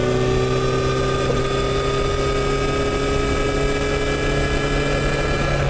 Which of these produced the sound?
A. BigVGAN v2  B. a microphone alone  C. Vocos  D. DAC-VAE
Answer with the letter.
B